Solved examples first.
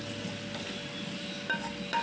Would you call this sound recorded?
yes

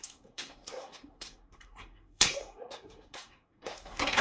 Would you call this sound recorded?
no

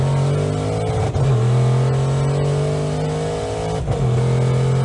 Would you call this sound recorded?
yes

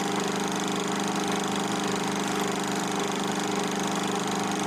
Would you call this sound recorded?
yes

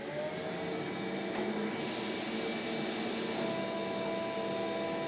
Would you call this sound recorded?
yes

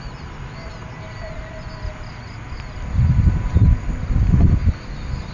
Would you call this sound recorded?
yes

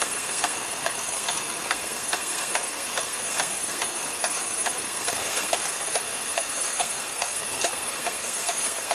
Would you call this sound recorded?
no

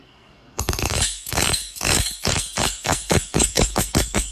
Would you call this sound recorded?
no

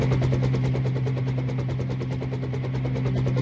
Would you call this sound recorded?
yes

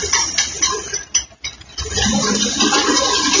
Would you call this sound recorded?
yes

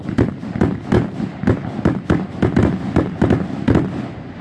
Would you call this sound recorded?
yes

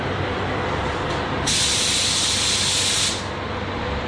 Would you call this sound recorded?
yes